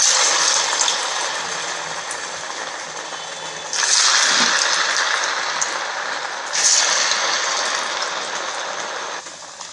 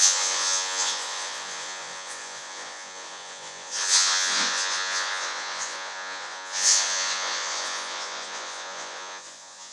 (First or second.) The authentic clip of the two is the first